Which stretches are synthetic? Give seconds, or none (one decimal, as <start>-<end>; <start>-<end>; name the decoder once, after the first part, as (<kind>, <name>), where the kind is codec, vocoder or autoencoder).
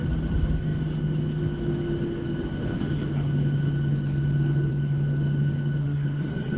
5.8-6.6 (codec, SNAC)